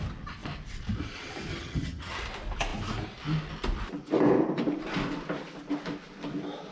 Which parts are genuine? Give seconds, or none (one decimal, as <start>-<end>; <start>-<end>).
0.0-1.5; 2.2-6.7